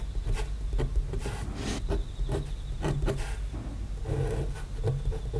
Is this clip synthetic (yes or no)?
no